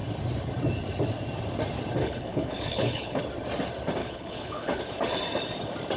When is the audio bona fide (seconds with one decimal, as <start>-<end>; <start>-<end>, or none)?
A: 0.0-2.0; 3.2-4.0; 4.8-6.0